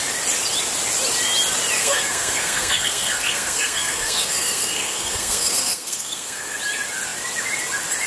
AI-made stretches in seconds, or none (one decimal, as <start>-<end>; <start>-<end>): 1.8-6.6

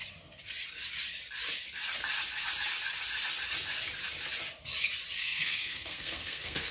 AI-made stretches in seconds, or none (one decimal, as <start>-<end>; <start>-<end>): 5.2-6.7

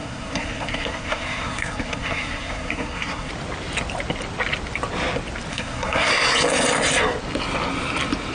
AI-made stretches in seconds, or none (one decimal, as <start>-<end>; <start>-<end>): 0.0-3.3; 5.5-6.1

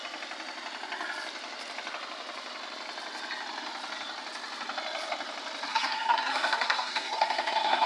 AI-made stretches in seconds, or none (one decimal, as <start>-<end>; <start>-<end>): 5.7-7.9

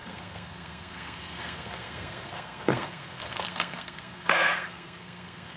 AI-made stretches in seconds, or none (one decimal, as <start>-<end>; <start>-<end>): 0.0-5.6

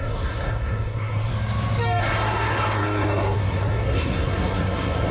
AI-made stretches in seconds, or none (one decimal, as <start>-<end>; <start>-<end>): 0.0-1.3; 2.0-5.1

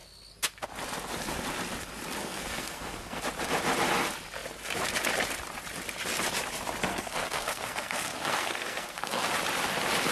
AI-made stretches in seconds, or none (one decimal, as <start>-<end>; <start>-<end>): 2.2-3.2; 6.9-9.3